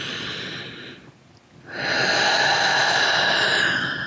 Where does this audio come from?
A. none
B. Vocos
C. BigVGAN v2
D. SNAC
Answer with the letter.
A